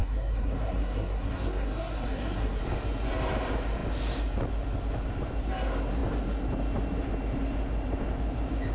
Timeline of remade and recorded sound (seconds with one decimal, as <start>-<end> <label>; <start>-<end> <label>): 0.0-2.6 remade; 2.6-8.7 recorded